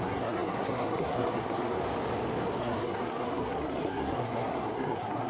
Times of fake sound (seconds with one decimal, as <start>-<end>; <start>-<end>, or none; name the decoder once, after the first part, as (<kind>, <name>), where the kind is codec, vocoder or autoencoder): 0.0-1.8 (codec, SNAC); 2.6-5.3